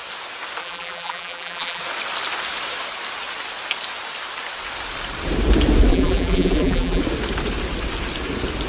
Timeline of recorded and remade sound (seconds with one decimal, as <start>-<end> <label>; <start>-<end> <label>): 0.0-0.6 recorded; 0.6-1.8 remade; 1.8-5.9 recorded; 5.9-7.0 remade; 7.0-8.7 recorded